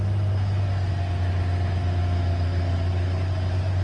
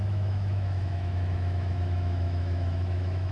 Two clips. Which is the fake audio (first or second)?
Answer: second